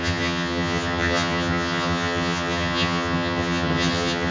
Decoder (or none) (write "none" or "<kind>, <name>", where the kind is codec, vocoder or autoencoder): vocoder, HiFi-GAN